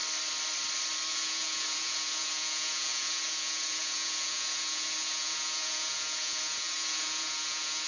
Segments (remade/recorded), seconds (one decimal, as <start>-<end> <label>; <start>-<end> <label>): 0.0-1.1 recorded; 1.1-7.9 remade